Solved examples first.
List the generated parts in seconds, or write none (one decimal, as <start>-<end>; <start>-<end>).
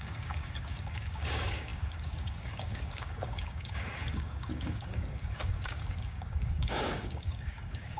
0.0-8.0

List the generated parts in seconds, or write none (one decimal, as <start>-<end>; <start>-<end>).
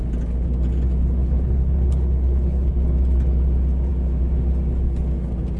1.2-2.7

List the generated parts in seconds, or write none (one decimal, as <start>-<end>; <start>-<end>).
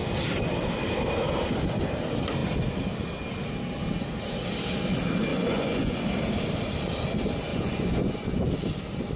5.3-6.0; 7.5-8.5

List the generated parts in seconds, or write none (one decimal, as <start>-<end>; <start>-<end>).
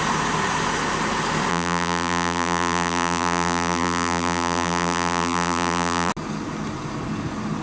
1.5-6.1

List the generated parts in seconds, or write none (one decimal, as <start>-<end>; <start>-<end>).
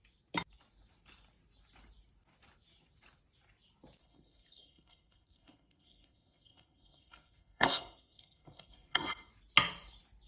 4.0-9.3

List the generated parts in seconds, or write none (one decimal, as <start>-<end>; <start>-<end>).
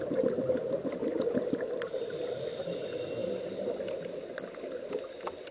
none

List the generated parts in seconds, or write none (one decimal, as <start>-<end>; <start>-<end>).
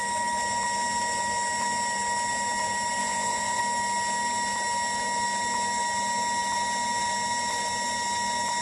3.0-3.6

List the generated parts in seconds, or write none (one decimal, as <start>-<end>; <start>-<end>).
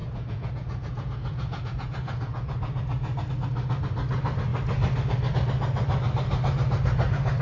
0.0-3.3